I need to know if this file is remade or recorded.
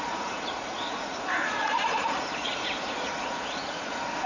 remade